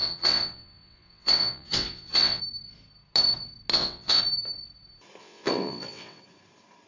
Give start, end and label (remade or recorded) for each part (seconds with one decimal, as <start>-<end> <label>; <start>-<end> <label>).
0.0-2.4 remade; 2.4-3.7 recorded; 3.7-4.2 remade; 4.2-5.2 recorded; 5.2-6.2 remade; 6.2-6.9 recorded